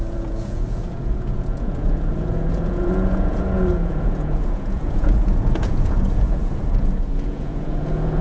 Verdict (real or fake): fake